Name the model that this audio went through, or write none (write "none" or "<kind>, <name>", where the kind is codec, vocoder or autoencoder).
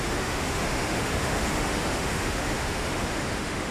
autoencoder, DAC-VAE